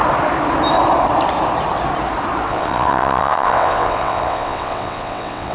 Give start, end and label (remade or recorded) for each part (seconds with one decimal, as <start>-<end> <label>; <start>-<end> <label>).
0.0-2.5 recorded; 2.5-5.5 remade